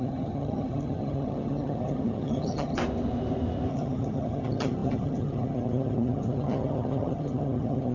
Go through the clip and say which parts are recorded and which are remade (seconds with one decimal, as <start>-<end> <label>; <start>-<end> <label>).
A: 0.0-2.8 remade; 2.8-3.7 recorded; 3.7-7.9 remade